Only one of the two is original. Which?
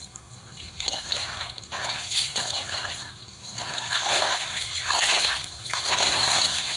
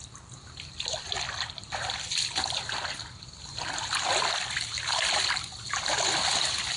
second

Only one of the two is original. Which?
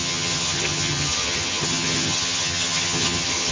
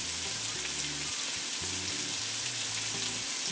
second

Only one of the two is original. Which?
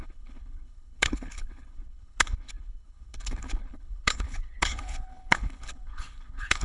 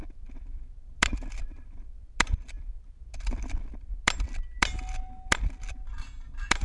second